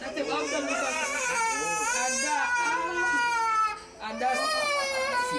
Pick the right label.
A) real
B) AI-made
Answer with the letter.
A